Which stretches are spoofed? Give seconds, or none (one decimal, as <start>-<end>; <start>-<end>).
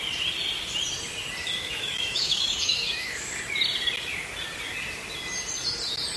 1.4-3.4